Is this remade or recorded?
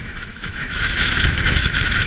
remade